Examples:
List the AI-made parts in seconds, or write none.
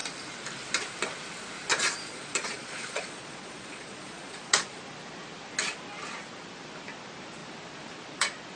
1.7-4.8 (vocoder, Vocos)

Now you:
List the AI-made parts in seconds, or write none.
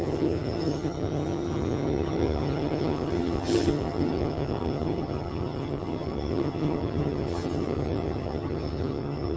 0.0-9.4 (vocoder, HiFi-GAN)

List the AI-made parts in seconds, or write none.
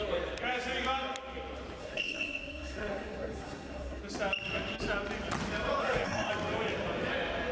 1.8-4.0 (codec, SNAC); 5.8-6.3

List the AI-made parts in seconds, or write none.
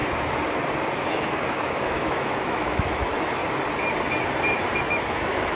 1.1-3.4 (autoencoder, DAC-VAE); 4.8-5.6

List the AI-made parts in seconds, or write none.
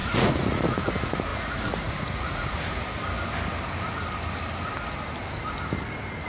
0.0-2.8 (vocoder, Vocos)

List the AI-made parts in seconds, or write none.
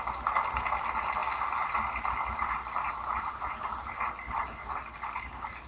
none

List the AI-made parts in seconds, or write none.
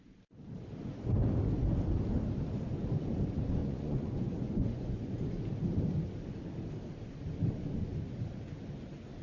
3.6-5.4 (vocoder, Vocos)